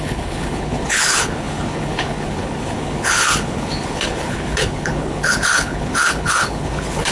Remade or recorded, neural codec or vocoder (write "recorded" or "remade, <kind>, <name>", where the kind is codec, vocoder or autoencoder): remade, codec, HILCodec